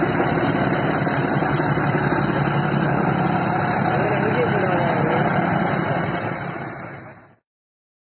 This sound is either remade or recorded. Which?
recorded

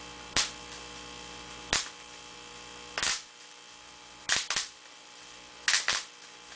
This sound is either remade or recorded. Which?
recorded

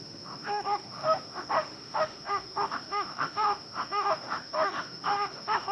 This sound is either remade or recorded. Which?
remade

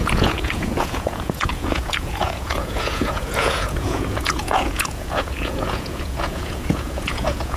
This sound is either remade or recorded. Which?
remade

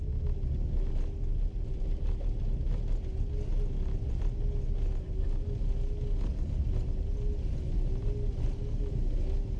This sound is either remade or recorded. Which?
recorded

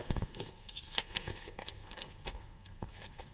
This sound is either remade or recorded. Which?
remade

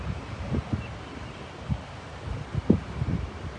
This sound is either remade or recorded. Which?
recorded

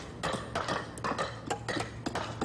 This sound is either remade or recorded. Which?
recorded